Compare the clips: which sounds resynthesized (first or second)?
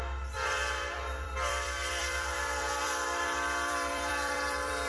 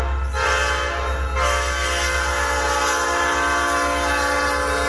first